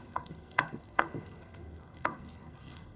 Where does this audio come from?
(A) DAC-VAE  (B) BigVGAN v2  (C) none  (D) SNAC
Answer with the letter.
D